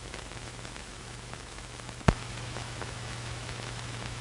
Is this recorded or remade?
remade